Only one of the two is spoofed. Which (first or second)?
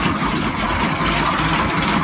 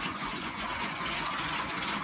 second